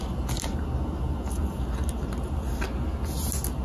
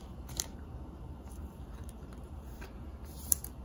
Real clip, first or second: first